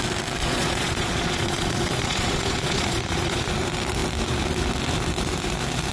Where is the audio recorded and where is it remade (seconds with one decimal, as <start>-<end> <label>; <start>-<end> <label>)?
0.0-0.4 recorded; 0.4-3.5 remade; 3.5-5.9 recorded